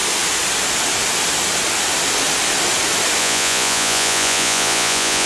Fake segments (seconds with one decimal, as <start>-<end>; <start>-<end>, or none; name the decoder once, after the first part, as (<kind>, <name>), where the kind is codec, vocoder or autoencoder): 3.2-5.3 (vocoder, Vocos)